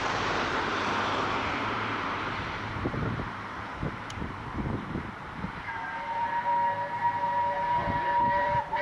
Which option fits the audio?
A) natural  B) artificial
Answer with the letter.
B